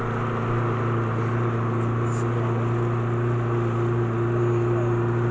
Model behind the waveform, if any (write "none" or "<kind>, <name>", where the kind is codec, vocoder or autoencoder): none